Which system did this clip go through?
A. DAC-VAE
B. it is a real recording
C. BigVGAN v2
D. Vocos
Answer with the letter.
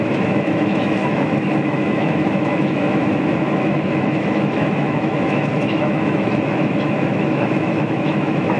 A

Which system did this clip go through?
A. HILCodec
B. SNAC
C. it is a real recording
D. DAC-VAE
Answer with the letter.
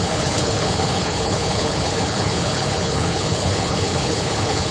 A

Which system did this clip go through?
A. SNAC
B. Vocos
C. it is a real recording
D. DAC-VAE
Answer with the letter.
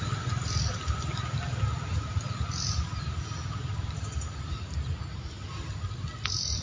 C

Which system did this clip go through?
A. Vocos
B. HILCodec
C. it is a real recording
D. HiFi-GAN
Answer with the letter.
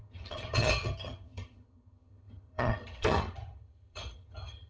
D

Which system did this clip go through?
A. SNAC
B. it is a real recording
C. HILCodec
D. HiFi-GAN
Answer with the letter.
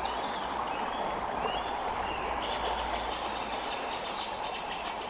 B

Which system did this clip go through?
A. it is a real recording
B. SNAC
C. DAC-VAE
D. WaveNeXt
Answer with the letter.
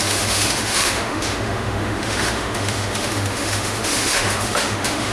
C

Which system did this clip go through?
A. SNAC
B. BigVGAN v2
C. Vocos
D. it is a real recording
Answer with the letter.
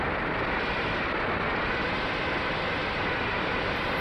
D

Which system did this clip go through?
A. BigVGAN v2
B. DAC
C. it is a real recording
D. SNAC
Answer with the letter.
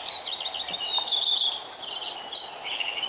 C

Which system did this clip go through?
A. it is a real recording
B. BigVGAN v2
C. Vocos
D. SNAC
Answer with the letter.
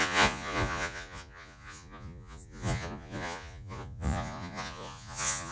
C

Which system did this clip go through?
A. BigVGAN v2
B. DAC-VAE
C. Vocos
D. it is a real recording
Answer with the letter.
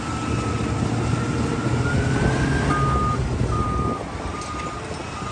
D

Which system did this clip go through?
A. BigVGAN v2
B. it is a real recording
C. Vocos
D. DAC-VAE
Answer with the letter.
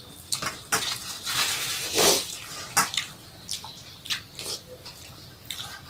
A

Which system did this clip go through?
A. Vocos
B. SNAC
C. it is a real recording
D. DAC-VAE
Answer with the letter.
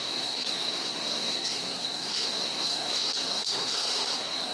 B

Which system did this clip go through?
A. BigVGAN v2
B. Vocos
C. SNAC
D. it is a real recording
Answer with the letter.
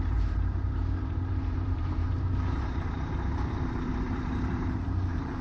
A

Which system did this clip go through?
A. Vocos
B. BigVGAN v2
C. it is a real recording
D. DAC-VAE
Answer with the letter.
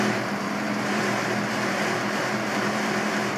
B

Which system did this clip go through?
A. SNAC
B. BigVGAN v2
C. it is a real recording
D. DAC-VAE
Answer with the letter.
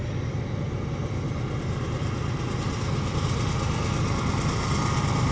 C